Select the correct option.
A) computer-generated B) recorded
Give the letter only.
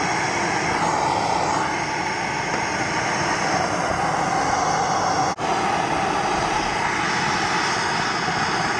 B